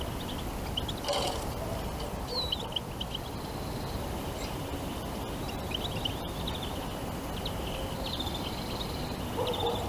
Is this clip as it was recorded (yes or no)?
yes